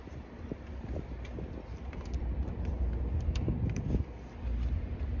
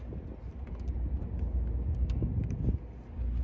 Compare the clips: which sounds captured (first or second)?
second